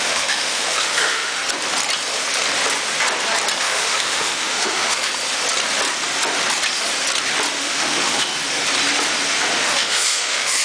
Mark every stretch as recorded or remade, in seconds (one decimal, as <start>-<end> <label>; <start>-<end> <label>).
0.0-1.4 remade; 1.4-3.6 recorded; 3.6-5.1 remade; 5.1-7.6 recorded; 7.6-8.3 remade; 8.3-9.6 recorded; 9.6-10.6 remade